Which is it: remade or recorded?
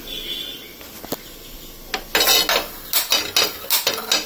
recorded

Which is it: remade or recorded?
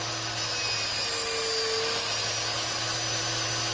recorded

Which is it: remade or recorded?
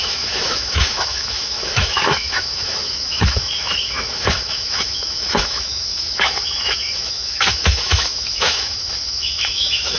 remade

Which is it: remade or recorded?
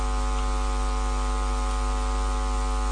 recorded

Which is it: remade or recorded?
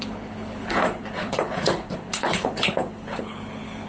remade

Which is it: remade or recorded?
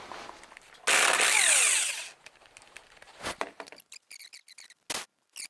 recorded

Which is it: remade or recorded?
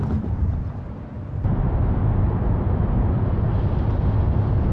recorded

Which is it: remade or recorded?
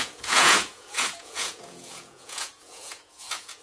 remade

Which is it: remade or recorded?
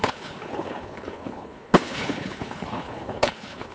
remade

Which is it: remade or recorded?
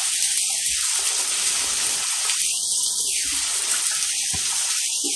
recorded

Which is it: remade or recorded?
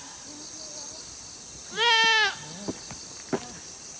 recorded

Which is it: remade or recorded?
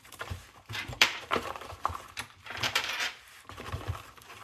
remade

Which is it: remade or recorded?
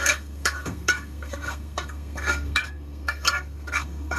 remade